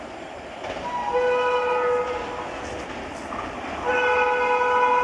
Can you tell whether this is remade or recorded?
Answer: recorded